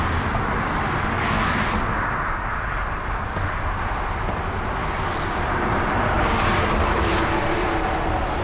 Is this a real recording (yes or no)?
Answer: yes